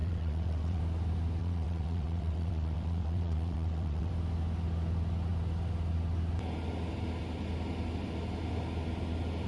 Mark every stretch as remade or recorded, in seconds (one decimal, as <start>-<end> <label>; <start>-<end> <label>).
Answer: 0.0-0.8 remade; 0.8-1.4 recorded; 1.4-4.1 remade; 4.1-9.5 recorded

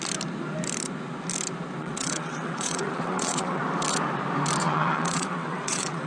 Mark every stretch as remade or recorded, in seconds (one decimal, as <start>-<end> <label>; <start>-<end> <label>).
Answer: 0.0-1.8 recorded; 1.8-3.6 remade; 3.6-4.6 recorded; 4.6-6.1 remade

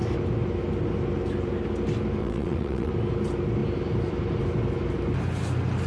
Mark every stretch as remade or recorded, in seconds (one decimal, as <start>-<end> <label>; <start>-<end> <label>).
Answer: 0.0-2.2 recorded; 2.2-2.9 remade; 2.9-5.9 recorded

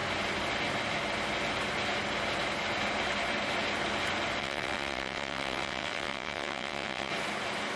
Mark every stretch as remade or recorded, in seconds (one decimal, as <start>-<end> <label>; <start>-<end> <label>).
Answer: 0.0-4.4 recorded; 4.4-7.1 remade; 7.1-7.8 recorded